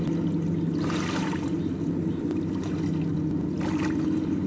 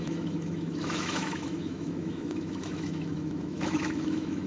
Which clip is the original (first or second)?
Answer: first